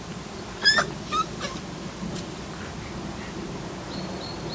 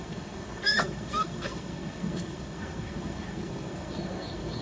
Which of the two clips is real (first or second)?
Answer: first